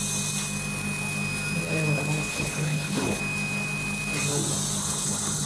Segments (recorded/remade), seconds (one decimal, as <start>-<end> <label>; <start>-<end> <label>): 0.0-2.3 recorded; 2.3-3.2 remade; 3.2-4.8 recorded; 4.8-5.5 remade